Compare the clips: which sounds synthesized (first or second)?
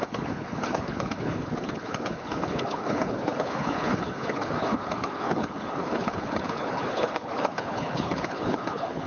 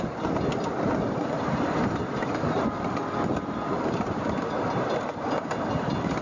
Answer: first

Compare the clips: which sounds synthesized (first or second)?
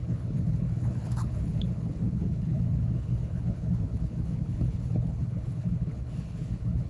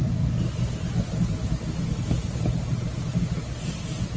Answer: first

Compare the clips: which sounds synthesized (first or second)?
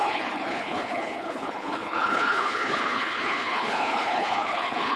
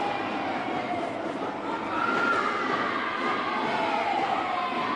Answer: first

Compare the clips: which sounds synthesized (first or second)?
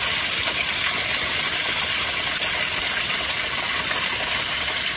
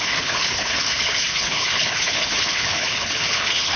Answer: second